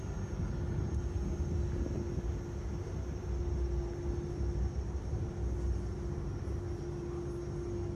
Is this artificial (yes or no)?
no